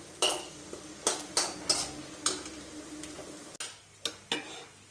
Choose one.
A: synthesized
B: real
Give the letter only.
B